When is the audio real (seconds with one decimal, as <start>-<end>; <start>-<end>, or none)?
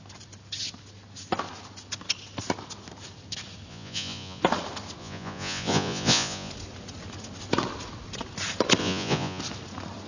0.0-3.7; 4.4-5.0; 6.5-8.8; 9.4-10.1